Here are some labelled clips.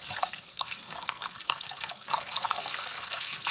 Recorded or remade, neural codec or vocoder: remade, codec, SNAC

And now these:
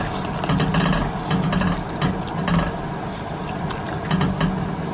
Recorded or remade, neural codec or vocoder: recorded